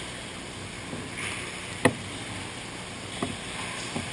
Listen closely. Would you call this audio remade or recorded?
recorded